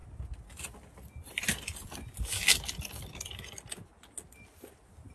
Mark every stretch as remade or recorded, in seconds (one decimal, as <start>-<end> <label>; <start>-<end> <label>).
0.0-5.1 recorded